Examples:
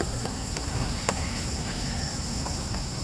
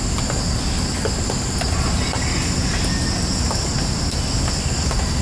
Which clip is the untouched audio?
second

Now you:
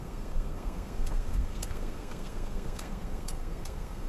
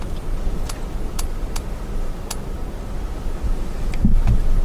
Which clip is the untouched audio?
second